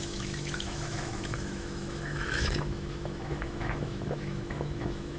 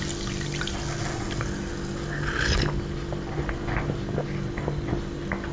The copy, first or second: first